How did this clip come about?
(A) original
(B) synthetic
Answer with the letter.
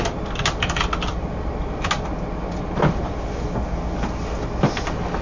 A